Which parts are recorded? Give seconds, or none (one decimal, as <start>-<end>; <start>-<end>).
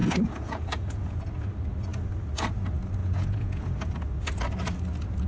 1.2-3.0; 3.9-5.3